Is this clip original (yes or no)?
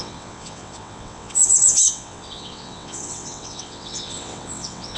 no